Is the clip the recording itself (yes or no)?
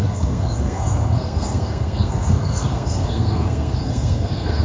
no